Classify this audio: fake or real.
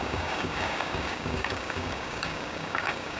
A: fake